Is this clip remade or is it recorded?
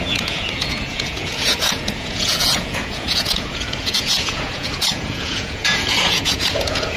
remade